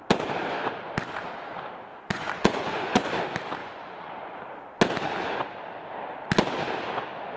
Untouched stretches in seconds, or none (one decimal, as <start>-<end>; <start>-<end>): 0.0-1.9; 3.1-3.6; 4.4-7.4